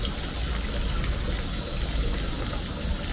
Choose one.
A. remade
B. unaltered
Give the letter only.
B